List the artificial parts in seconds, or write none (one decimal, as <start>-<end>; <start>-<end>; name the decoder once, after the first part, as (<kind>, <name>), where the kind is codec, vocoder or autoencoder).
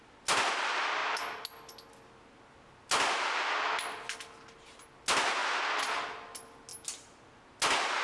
none